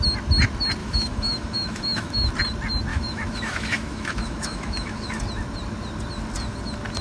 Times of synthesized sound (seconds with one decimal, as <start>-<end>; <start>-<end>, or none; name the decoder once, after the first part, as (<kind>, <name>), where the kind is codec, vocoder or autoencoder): 0.8-2.3 (autoencoder, DAC-VAE); 2.9-5.2